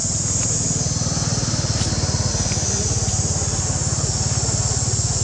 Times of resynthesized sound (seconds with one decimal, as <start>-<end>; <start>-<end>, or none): none